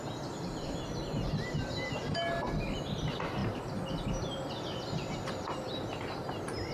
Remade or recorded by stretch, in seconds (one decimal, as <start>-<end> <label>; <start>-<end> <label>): 0.0-6.7 recorded

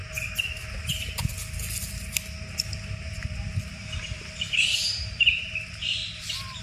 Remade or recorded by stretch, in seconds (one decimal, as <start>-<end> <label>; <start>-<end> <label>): 0.0-6.6 recorded

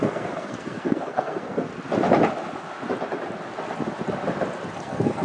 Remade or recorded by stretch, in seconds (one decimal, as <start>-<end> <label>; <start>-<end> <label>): 0.0-1.7 remade; 1.7-4.8 recorded; 4.8-5.2 remade